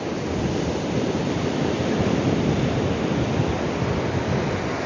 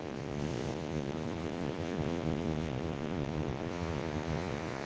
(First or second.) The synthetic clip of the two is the second